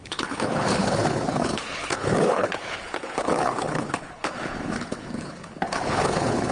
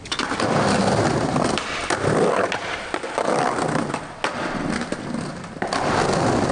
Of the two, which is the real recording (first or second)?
second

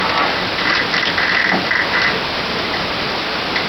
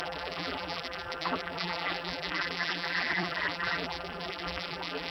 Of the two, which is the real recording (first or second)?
first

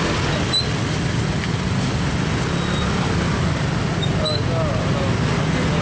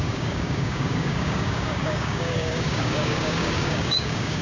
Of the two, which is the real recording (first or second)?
first